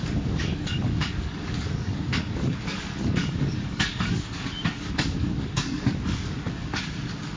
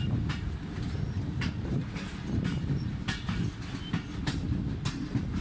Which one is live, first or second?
second